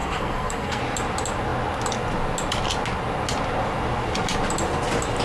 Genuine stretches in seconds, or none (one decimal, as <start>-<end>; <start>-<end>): 0.8-5.2